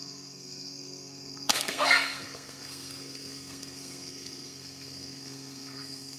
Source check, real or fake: fake